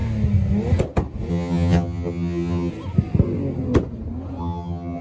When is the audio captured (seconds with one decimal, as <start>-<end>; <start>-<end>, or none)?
0.0-1.3; 2.7-4.4